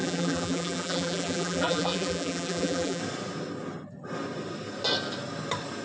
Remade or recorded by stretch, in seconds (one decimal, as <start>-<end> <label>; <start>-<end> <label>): 0.0-3.0 remade; 3.0-5.8 recorded